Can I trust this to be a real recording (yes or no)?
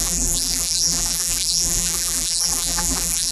no